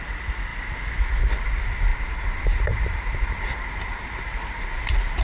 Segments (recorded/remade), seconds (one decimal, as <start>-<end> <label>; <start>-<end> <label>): 0.0-1.9 recorded; 1.9-3.7 remade; 3.7-5.2 recorded